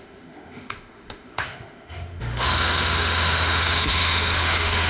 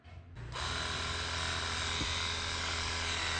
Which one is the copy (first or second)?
first